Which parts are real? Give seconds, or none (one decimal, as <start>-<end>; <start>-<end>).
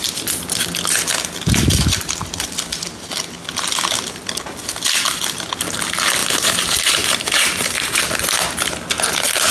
0.0-6.2; 8.0-9.5